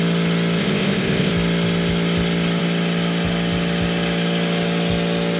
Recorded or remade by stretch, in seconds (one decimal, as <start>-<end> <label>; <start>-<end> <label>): 0.0-0.6 recorded; 0.6-1.3 remade; 1.3-5.4 recorded